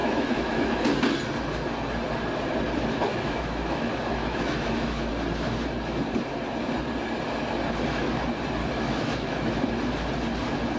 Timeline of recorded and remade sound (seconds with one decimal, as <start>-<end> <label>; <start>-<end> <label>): 0.0-0.8 remade; 0.8-3.1 recorded; 3.1-5.1 remade; 5.1-8.6 recorded; 8.6-9.7 remade; 9.7-10.8 recorded